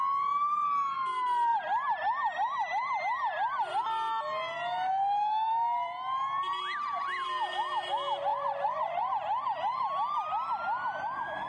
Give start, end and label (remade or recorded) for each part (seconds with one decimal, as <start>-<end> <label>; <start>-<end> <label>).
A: 0.0-8.3 recorded; 8.3-9.1 remade; 9.1-11.5 recorded